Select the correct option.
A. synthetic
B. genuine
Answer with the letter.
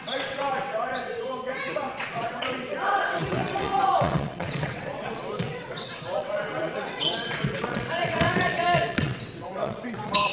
A